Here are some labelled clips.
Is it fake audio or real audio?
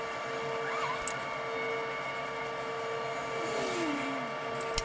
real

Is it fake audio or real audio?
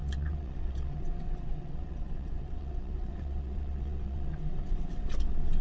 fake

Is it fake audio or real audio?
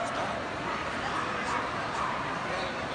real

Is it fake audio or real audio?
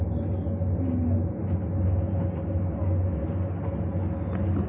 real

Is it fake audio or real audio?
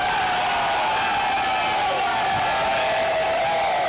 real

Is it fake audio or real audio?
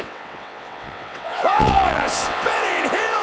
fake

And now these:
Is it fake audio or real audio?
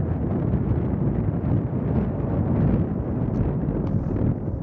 real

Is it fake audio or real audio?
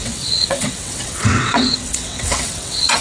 fake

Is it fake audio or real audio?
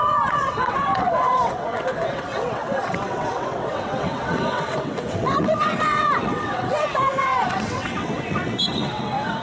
fake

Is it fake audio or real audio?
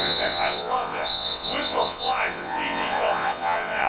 fake